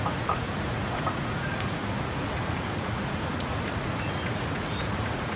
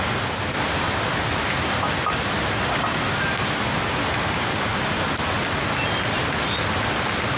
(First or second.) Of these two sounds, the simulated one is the first